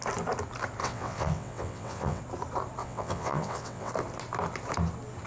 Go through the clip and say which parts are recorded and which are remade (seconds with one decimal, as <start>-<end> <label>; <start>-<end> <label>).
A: 0.0-0.8 recorded; 0.8-2.2 remade; 2.2-2.8 recorded; 2.8-3.9 remade; 3.9-5.3 recorded